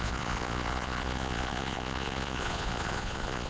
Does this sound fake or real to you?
fake